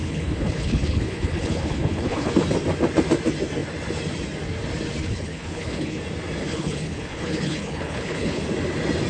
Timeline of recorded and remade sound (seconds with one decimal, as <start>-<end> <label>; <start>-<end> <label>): 0.0-2.3 remade; 2.3-5.0 recorded; 5.0-6.0 remade; 6.0-6.4 recorded; 6.4-8.4 remade; 8.4-9.1 recorded